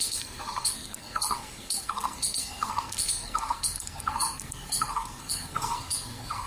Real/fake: fake